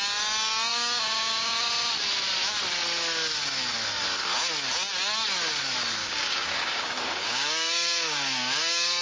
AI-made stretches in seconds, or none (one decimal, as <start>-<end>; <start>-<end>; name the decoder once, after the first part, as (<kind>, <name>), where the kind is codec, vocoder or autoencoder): 0.7-1.7 (codec, DAC); 6.0-9.0